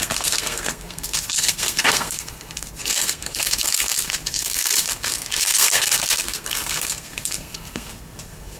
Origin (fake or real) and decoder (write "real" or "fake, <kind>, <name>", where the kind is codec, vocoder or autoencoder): fake, codec, SNAC